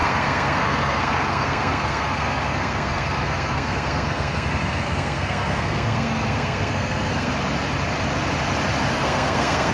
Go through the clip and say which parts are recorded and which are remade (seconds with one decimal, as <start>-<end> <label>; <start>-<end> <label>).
0.0-7.3 remade; 7.3-8.9 recorded; 8.9-9.7 remade